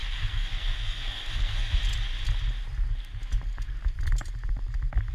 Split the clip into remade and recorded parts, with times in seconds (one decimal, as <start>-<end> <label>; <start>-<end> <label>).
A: 0.0-1.8 remade; 1.8-5.1 recorded